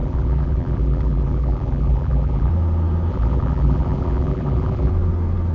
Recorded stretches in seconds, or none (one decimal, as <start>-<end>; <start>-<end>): 2.5-3.1; 4.9-5.5